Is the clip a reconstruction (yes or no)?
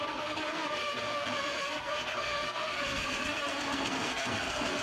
yes